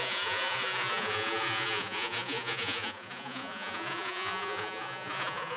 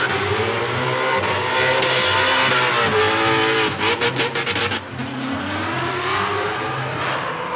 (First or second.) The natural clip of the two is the second